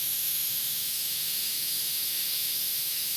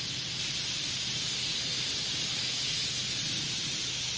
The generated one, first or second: first